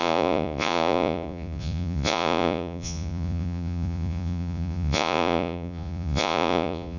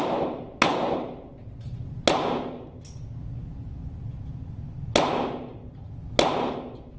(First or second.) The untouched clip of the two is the second